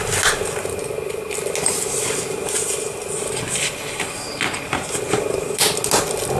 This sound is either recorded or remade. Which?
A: recorded